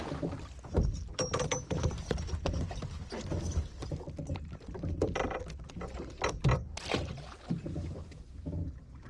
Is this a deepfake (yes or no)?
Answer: no